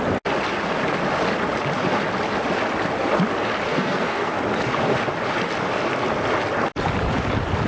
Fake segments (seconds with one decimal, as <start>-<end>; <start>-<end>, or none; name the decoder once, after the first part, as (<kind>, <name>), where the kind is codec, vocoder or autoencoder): 3.7-4.4 (codec, SNAC)